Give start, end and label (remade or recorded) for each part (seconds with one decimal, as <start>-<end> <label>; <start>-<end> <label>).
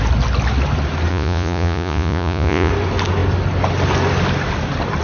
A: 0.0-1.1 recorded; 1.1-2.7 remade; 2.7-5.0 recorded